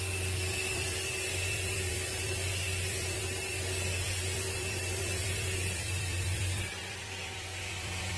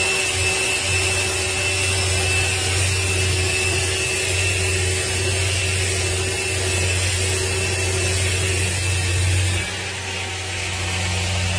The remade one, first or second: first